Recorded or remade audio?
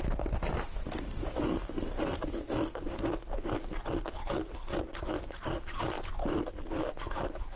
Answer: recorded